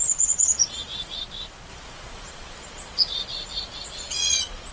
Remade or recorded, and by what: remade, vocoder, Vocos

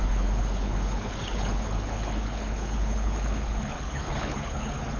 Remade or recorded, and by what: remade, codec, HILCodec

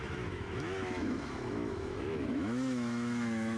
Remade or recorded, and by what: remade, autoencoder, DAC-VAE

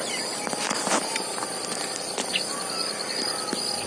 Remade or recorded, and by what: recorded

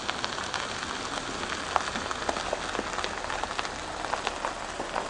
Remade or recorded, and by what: recorded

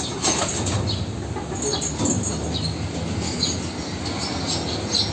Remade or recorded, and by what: recorded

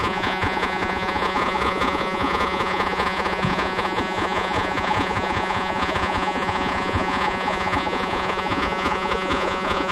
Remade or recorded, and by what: remade, vocoder, Vocos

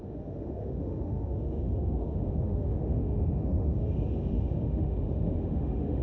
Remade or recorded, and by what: remade, autoencoder, DAC-VAE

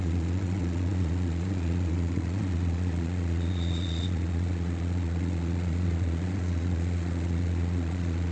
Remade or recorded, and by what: remade, vocoder, Vocos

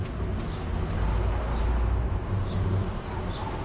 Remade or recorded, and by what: recorded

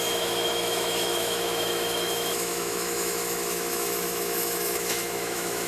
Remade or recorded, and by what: remade, autoencoder, DAC-VAE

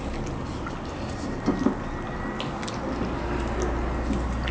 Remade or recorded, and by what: recorded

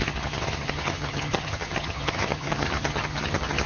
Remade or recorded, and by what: remade, vocoder, HiFi-GAN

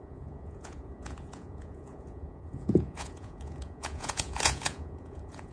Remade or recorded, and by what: remade, vocoder, Vocos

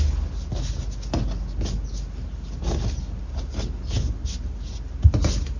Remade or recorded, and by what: recorded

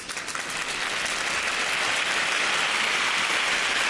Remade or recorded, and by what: recorded